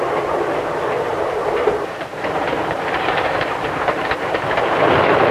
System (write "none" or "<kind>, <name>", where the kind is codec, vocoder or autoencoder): vocoder, BigVGAN v2